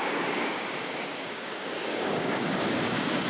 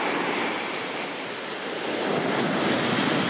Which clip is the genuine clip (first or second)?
second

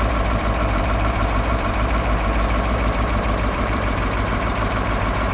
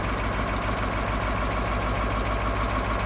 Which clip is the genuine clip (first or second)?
second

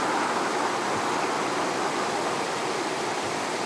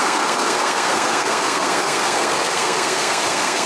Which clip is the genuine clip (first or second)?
first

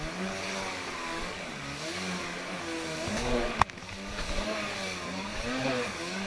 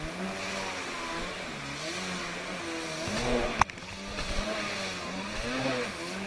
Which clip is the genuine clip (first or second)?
second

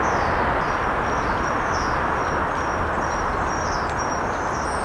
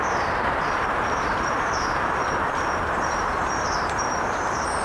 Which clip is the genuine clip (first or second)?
first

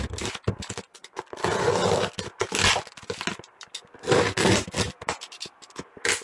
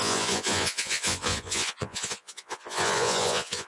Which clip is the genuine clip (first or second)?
first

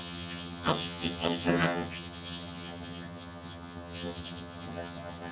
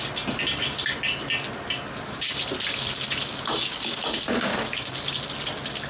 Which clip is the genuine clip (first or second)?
second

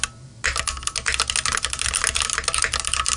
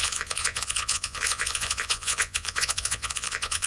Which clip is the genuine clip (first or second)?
first